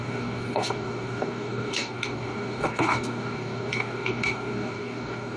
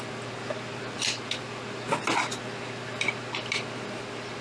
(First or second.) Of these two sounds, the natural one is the second